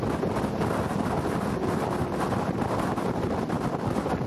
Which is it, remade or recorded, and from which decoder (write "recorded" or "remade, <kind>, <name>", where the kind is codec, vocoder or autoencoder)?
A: recorded